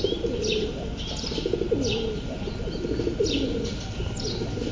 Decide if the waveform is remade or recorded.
recorded